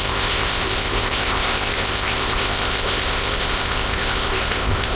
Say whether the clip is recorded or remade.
remade